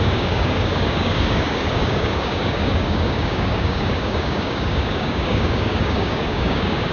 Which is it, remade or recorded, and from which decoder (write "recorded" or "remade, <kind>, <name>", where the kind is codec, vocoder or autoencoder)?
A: remade, codec, DAC